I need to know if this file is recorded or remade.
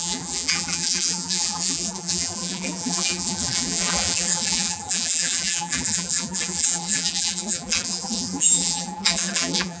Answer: remade